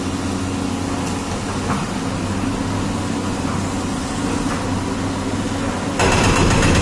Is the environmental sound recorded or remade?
recorded